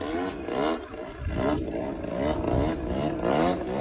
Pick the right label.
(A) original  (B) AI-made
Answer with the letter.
A